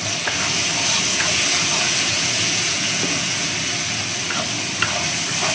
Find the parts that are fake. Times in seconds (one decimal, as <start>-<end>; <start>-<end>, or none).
1.1-3.5